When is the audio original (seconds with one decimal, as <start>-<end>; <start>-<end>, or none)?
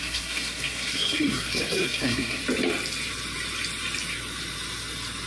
2.4-5.3